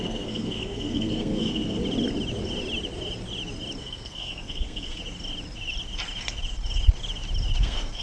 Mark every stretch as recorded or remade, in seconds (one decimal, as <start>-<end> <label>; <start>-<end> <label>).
0.0-1.8 remade; 1.8-3.8 recorded; 3.8-5.0 remade; 5.0-7.6 recorded; 7.6-8.0 remade